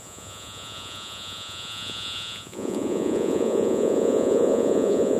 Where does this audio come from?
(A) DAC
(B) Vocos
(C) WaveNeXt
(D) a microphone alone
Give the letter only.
B